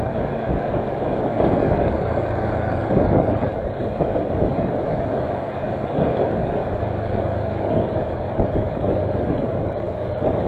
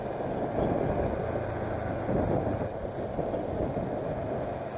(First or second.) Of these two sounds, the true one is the second